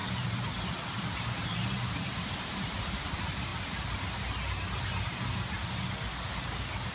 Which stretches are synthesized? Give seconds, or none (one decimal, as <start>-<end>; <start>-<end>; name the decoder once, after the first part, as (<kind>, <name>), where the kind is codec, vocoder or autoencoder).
0.0-3.0 (vocoder, BigVGAN v2)